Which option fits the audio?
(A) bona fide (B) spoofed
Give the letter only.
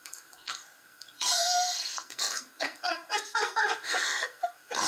B